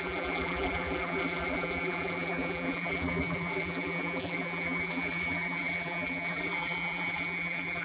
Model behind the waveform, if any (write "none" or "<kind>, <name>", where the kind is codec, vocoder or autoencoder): vocoder, BigVGAN v2